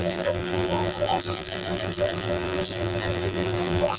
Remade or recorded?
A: remade